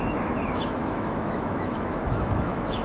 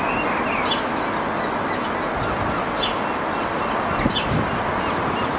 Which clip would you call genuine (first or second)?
second